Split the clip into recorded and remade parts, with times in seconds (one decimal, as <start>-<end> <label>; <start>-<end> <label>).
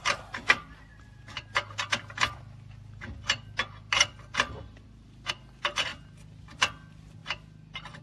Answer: 0.0-8.0 recorded